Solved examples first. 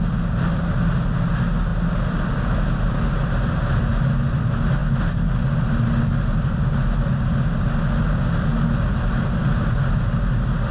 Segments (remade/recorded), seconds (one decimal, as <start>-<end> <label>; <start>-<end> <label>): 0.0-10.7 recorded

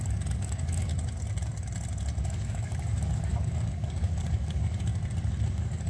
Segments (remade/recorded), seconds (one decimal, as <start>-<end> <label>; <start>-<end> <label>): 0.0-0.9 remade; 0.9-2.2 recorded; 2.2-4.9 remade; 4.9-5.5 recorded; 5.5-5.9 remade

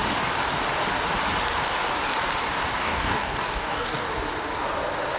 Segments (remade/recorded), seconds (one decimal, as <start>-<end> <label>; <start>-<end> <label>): 0.0-2.8 recorded; 2.8-4.1 remade; 4.1-5.2 recorded

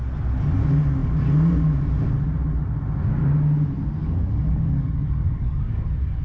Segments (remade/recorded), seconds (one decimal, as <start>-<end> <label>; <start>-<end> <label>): 0.0-4.0 recorded; 4.0-5.8 remade; 5.8-6.2 recorded

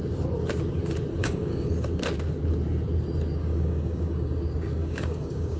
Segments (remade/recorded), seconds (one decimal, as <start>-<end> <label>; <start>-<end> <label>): 0.0-1.2 recorded; 1.2-1.7 remade; 1.7-3.4 recorded; 3.4-5.6 remade

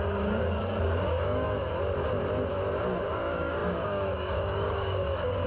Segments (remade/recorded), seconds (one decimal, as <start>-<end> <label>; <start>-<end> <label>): 0.0-1.7 remade; 1.7-3.1 recorded; 3.1-5.5 remade